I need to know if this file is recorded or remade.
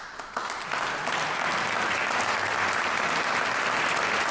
recorded